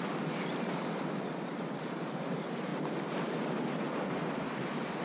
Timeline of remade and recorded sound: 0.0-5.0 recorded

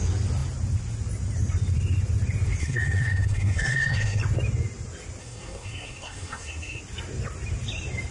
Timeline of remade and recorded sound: 0.0-2.6 recorded; 2.6-4.2 remade; 4.2-5.2 recorded; 5.2-6.8 remade; 6.8-8.1 recorded

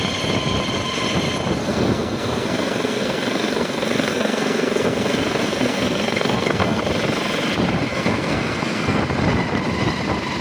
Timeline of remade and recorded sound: 0.0-1.6 recorded; 1.6-6.8 remade; 6.8-7.9 recorded; 7.9-9.0 remade; 9.0-10.4 recorded